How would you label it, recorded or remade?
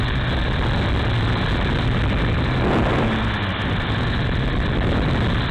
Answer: recorded